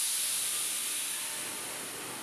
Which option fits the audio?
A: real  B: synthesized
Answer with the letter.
A